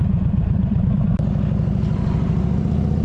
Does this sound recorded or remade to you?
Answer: remade